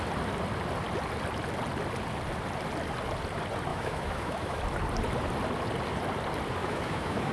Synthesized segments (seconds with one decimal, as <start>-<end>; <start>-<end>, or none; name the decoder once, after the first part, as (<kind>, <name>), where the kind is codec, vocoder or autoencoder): 3.7-4.6 (autoencoder, DAC-VAE); 6.6-7.3